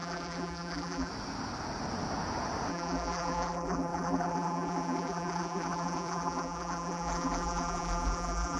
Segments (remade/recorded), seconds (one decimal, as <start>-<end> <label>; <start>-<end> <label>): 0.0-1.1 remade; 1.1-2.7 recorded; 2.7-8.6 remade

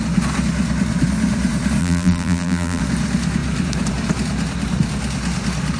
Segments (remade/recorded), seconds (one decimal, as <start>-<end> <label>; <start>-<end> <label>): 0.0-1.8 recorded; 1.8-2.8 remade; 2.8-5.8 recorded

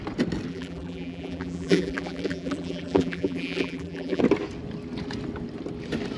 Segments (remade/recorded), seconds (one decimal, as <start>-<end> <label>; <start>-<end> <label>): 0.0-0.5 recorded; 0.5-4.2 remade; 4.2-6.2 recorded